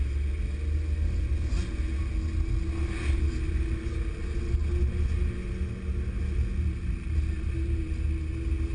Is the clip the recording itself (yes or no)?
yes